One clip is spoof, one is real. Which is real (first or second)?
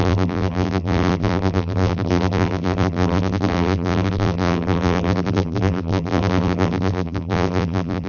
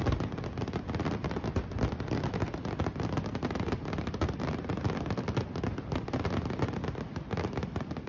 second